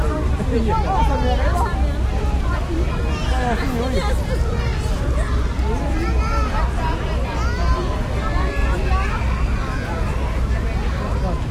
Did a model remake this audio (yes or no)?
no